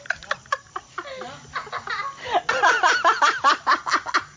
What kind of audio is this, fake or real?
real